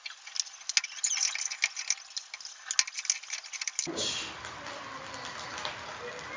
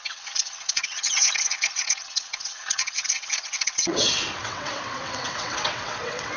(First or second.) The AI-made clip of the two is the second